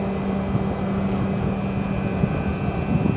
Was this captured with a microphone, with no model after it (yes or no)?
yes